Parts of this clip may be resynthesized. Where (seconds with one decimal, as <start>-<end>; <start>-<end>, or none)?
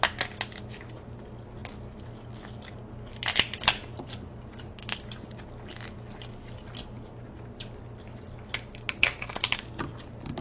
none